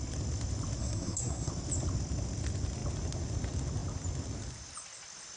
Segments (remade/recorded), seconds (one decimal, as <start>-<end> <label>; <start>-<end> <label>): 0.0-0.8 recorded; 0.8-1.5 remade; 1.5-5.4 recorded

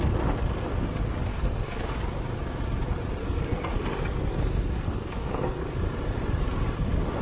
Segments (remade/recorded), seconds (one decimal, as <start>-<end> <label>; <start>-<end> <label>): 0.0-1.3 recorded; 1.3-1.9 remade; 1.9-3.2 recorded; 3.2-5.7 remade; 5.7-7.2 recorded

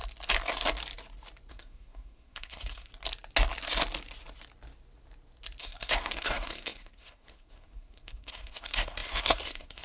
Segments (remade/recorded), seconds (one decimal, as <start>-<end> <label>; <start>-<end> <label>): 0.0-1.5 recorded; 1.5-2.9 remade; 2.9-5.6 recorded; 5.6-9.8 remade